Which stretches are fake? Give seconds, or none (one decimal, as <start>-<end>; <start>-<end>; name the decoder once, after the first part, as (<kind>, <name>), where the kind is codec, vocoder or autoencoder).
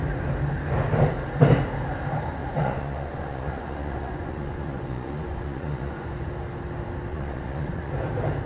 2.4-6.3 (vocoder, Vocos); 7.1-7.9